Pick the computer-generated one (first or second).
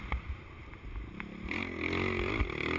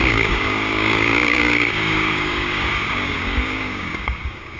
second